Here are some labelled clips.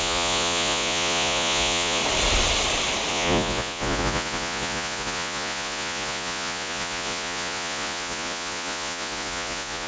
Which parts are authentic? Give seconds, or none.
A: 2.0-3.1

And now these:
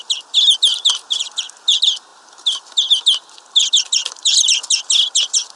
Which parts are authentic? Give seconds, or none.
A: 0.0-5.6

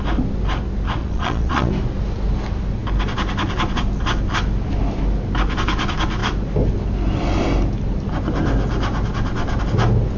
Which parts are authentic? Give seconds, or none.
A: 0.0-1.0; 1.7-10.2

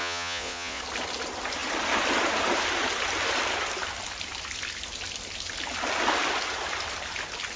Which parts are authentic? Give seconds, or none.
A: 0.8-7.6

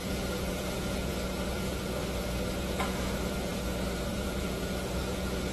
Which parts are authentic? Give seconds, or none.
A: 2.0-2.6; 3.5-4.1

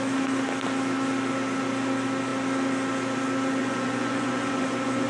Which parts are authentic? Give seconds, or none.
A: 0.0-3.6

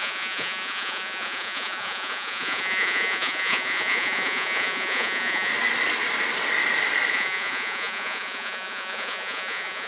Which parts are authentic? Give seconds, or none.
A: 5.5-7.1